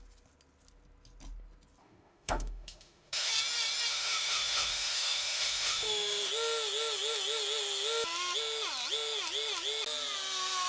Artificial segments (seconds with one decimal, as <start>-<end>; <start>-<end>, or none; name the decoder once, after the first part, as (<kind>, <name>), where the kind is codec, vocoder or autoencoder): 1.8-3.3 (autoencoder, DAC-VAE); 3.9-6.3